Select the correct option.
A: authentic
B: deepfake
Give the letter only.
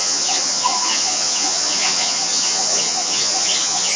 B